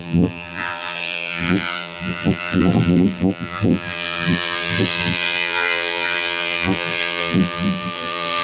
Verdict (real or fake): fake